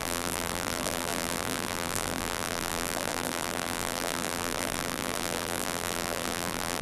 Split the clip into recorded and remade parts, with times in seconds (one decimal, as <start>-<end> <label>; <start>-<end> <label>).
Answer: 0.0-6.8 remade